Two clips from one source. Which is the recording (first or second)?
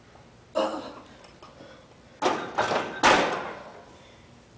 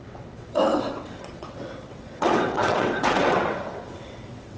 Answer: first